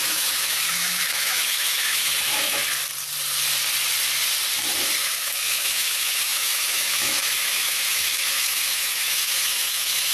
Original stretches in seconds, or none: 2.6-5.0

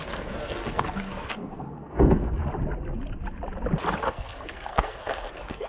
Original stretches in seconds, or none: 2.4-4.0

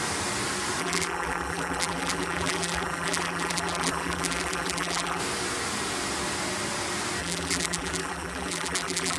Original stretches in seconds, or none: 0.0-0.8; 5.2-7.2

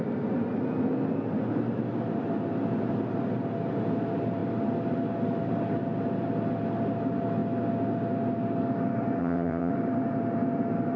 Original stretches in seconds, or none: 0.0-9.2; 9.7-11.0

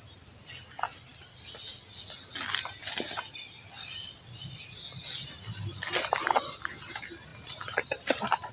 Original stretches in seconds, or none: 0.0-7.3

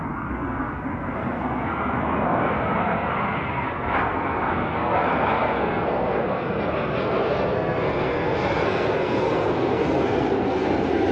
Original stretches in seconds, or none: none